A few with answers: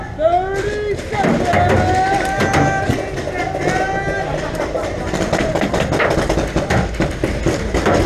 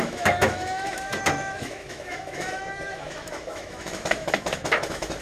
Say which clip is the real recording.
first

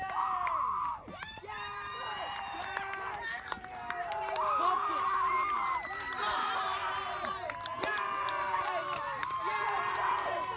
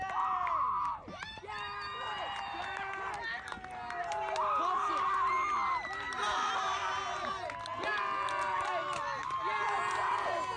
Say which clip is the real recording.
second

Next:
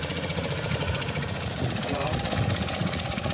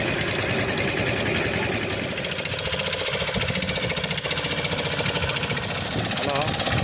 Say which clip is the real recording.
second